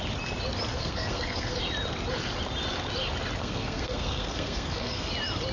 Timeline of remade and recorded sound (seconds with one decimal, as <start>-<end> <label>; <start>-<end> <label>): 0.0-0.7 recorded; 0.7-1.6 remade; 1.6-3.4 recorded; 3.4-5.1 remade; 5.1-5.5 recorded